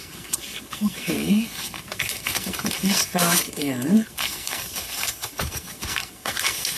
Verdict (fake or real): fake